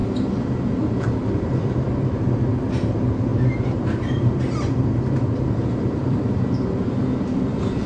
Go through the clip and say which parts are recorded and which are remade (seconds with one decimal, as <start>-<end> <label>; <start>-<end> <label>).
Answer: 0.0-1.2 recorded; 1.2-7.9 remade